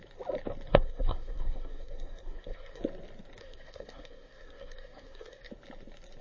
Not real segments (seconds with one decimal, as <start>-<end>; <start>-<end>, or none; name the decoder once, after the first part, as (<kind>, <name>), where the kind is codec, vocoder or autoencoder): 0.7-2.8 (codec, SNAC); 3.4-5.5